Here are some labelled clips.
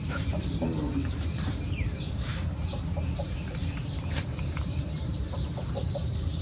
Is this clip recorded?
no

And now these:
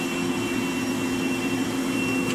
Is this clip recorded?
yes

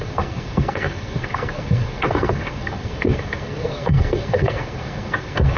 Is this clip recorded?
no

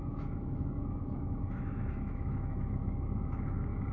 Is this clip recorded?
no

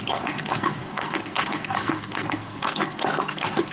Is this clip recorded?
no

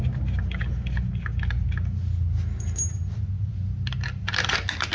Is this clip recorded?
yes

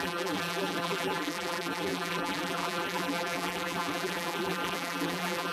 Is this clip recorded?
no